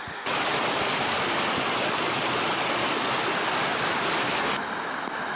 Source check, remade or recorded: recorded